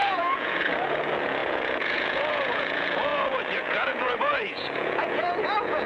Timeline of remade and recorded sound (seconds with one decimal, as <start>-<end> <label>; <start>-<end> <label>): 0.0-5.9 remade